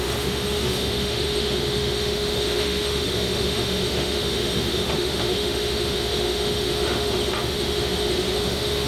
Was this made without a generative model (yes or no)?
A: no